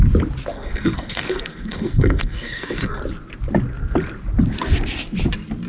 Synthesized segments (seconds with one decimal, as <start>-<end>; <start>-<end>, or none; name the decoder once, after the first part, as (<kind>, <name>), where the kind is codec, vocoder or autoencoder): 0.5-3.0 (codec, SNAC)